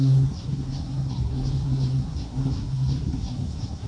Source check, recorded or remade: remade